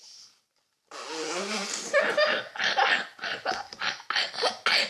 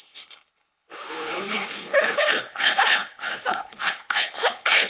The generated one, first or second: second